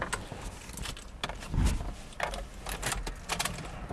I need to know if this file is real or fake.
real